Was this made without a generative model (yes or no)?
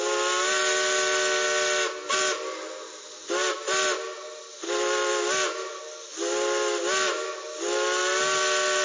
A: yes